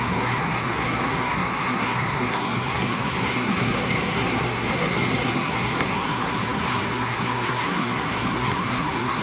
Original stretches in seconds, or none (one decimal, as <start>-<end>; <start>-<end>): none